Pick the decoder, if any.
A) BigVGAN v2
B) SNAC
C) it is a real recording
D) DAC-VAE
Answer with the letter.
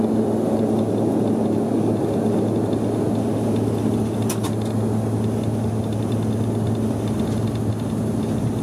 C